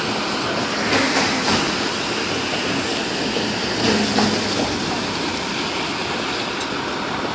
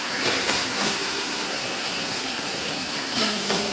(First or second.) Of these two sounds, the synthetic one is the second